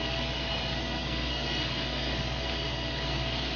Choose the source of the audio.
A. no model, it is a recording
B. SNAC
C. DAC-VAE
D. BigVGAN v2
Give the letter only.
B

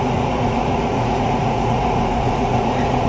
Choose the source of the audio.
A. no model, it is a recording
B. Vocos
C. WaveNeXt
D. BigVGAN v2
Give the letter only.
B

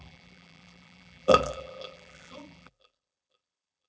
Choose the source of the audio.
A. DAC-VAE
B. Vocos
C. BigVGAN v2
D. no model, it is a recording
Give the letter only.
C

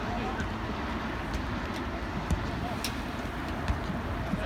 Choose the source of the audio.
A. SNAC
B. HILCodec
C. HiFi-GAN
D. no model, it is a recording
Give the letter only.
D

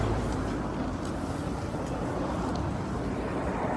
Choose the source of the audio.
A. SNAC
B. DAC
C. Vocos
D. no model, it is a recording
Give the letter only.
D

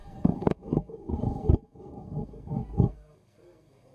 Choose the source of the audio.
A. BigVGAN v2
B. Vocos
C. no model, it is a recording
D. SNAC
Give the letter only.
D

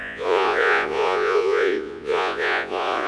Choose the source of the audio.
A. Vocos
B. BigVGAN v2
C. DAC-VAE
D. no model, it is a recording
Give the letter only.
A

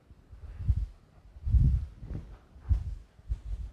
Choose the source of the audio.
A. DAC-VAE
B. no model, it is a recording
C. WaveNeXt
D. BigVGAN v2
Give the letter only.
B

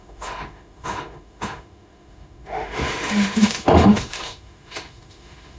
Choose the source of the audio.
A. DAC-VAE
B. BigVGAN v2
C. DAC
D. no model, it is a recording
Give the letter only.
A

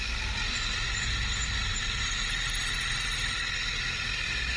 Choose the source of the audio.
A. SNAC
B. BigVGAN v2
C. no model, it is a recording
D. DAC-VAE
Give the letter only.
C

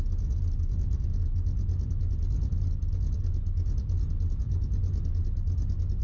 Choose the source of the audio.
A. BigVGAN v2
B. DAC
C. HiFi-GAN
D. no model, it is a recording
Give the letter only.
D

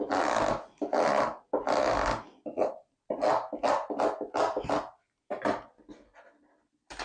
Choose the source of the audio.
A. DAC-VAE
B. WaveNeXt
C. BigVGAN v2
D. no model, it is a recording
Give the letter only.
D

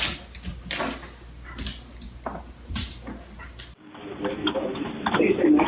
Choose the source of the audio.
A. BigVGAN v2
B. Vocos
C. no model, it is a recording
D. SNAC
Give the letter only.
C